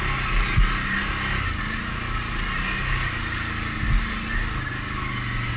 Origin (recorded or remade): recorded